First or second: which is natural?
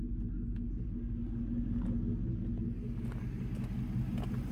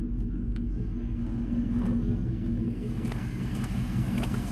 first